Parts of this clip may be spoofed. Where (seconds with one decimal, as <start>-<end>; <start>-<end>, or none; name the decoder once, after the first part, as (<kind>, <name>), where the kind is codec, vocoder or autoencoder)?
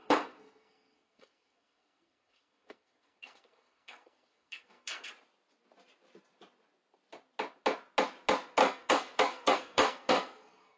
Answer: 0.0-5.1 (codec, SNAC); 8.6-10.8